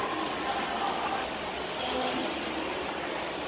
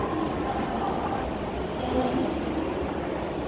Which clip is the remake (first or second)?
second